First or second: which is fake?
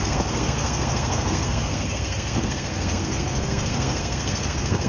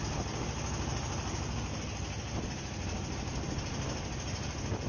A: first